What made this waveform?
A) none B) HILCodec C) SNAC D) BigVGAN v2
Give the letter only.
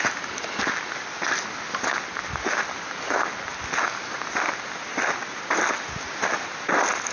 A